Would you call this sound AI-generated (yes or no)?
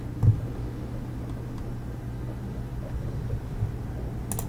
no